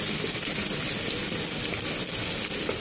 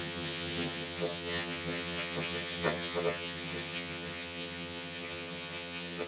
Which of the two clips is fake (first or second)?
second